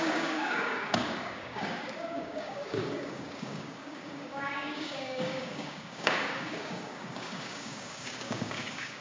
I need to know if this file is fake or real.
fake